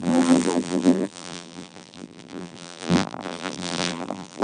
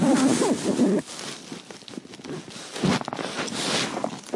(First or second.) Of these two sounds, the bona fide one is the second